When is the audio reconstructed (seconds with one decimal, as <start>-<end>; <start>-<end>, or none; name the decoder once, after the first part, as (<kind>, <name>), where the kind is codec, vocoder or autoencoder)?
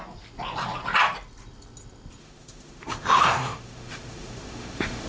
2.2-5.1 (autoencoder, DAC-VAE)